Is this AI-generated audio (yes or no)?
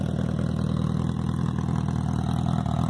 no